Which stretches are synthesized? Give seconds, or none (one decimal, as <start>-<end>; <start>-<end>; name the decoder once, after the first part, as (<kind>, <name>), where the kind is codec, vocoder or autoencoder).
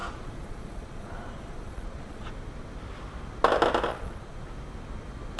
0.0-2.3 (vocoder, Vocos); 3.9-4.4